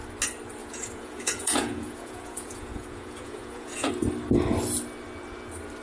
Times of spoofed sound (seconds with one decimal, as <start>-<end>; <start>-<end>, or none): 0.6-3.9